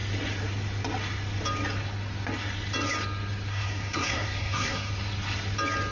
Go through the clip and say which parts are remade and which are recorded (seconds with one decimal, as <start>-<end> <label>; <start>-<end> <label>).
0.0-3.5 recorded; 3.5-4.9 remade; 4.9-5.9 recorded